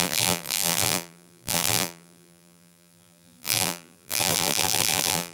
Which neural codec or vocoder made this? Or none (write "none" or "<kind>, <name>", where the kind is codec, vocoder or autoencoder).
vocoder, BigVGAN v2